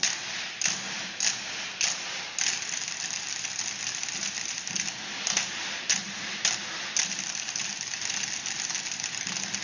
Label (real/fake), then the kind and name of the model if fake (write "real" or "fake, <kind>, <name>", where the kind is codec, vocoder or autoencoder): real